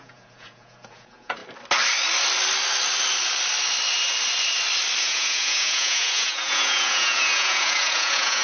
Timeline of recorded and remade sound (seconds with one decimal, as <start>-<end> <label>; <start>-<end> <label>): 0.0-1.4 remade; 1.4-5.0 recorded; 5.0-8.4 remade